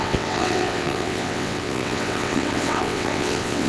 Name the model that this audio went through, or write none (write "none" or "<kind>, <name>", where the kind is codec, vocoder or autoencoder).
vocoder, WaveNeXt